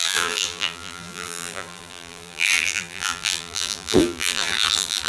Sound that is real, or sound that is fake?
fake